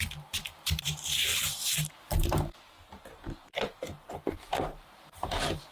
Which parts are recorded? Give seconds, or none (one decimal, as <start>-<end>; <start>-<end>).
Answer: none